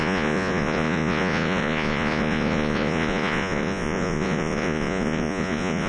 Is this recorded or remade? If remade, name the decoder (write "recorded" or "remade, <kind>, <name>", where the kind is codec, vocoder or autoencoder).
remade, vocoder, Vocos